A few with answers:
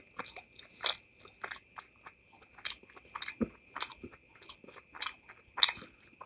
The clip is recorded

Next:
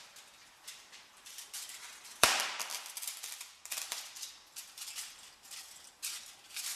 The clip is remade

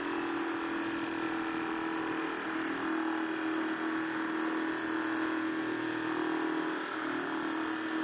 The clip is recorded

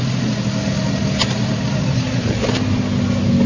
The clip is recorded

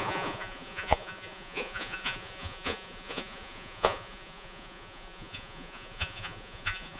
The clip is remade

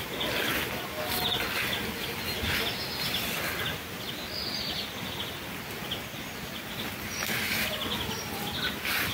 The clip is recorded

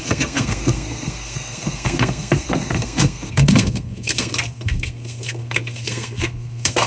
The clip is remade